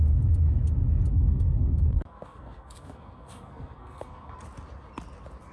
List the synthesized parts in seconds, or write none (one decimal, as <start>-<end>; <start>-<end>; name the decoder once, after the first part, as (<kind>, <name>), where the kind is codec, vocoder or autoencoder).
1.1-4.4 (codec, SNAC)